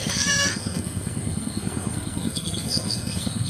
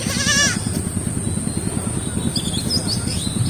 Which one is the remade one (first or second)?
first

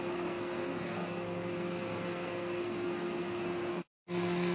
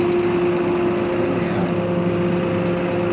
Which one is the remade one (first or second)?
first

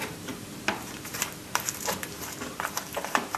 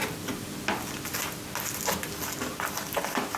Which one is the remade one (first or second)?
first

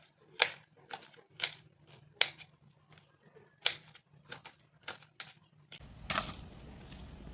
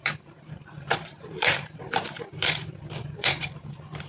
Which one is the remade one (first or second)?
second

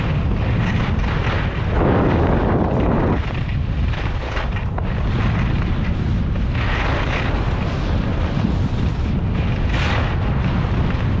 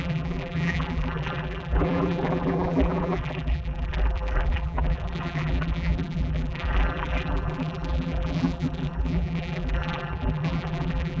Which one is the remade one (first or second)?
second